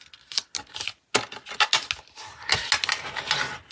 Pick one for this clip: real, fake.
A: real